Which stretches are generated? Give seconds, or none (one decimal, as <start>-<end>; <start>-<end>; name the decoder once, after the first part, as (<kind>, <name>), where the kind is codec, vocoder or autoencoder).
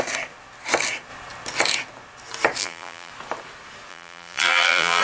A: 2.6-3.1 (vocoder, BigVGAN v2); 3.9-5.0